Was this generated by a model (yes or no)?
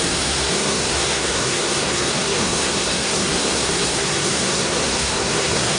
yes